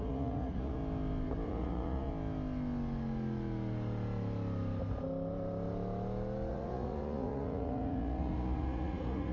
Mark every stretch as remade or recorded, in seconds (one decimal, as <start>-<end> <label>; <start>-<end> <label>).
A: 0.0-0.8 remade; 0.8-1.5 recorded; 1.5-2.1 remade; 2.1-6.5 recorded; 6.5-9.3 remade